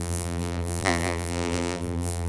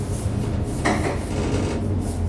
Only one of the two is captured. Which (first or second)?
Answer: second